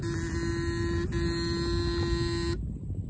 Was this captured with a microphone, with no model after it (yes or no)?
yes